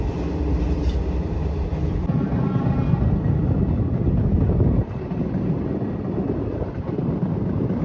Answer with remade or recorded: recorded